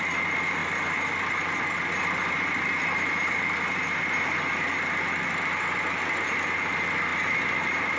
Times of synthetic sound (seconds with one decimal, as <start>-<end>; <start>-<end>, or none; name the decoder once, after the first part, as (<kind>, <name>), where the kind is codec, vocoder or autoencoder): 0.6-3.8 (vocoder, BigVGAN v2)